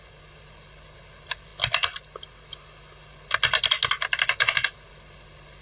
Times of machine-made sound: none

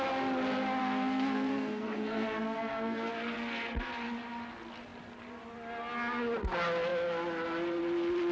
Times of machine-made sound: 0.8-3.1 (codec, SNAC)

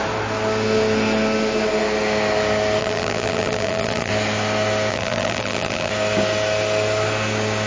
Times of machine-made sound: 2.8-4.1 (vocoder, BigVGAN v2); 4.9-5.9

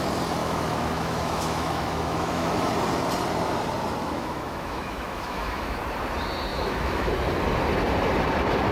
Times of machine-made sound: 0.4-2.7 (autoencoder, DAC-VAE); 4.0-5.8; 6.5-7.1

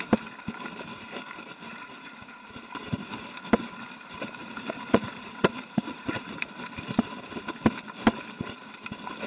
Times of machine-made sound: 1.7-2.6 (vocoder, Vocos); 4.4-6.5

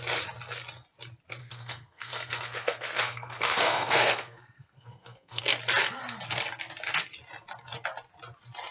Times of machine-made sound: 1.4-5.4 (codec, SNAC)

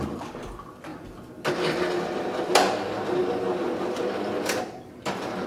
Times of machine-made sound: none